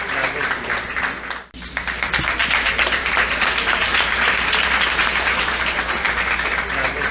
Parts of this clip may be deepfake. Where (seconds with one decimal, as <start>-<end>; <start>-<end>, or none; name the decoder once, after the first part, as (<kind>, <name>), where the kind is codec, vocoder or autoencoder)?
2.4-6.2 (vocoder, BigVGAN v2)